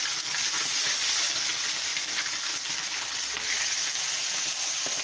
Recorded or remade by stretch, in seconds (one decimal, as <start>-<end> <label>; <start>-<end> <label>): 0.0-5.0 recorded